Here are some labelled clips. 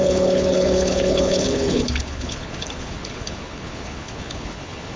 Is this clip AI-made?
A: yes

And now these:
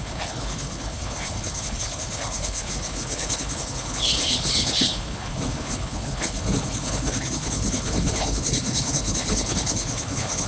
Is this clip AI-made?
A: yes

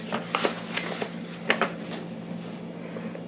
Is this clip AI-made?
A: no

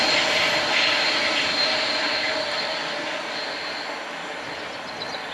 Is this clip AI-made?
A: no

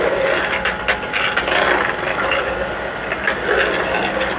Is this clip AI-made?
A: no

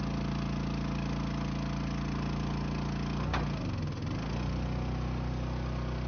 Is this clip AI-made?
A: no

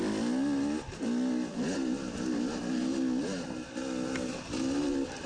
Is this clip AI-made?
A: no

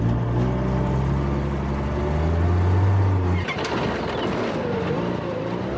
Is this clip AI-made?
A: no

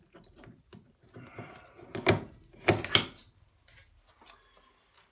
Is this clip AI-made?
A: no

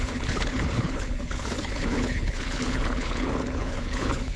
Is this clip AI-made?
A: yes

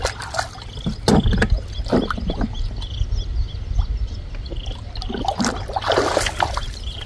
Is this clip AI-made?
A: no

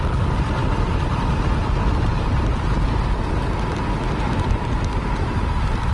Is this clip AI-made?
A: no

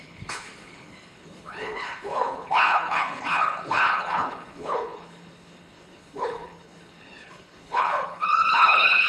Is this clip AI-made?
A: yes